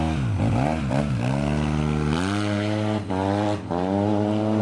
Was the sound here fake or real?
real